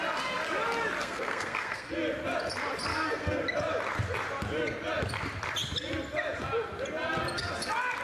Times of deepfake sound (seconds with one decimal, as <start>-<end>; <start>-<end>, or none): 1.0-1.9; 2.9-3.4